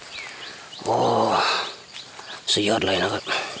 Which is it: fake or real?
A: real